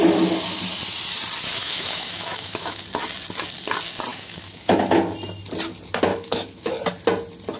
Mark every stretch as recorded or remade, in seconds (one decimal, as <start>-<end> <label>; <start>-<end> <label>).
0.0-1.6 recorded; 1.6-2.8 remade; 2.8-4.1 recorded; 4.1-4.8 remade; 4.8-6.1 recorded; 6.1-6.7 remade; 6.7-7.6 recorded